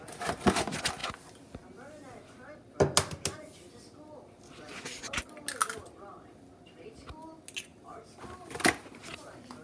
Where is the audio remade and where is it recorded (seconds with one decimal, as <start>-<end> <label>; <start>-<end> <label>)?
0.0-9.6 recorded